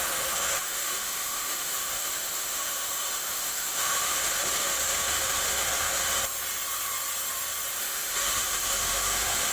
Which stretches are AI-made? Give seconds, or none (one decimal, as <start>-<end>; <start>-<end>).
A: 0.0-6.0; 7.8-9.5